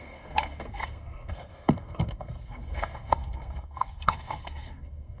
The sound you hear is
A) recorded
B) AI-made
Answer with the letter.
B